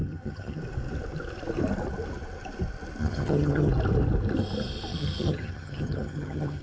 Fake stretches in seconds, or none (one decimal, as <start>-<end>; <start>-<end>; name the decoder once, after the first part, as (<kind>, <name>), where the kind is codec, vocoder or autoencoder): 0.0-0.6 (vocoder, HiFi-GAN); 3.0-3.7; 4.9-6.6